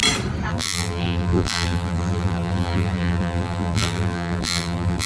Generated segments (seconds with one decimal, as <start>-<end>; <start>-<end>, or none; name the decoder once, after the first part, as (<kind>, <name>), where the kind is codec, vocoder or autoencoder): 0.5-5.1 (vocoder, BigVGAN v2)